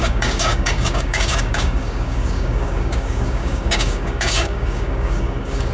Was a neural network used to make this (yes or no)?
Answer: yes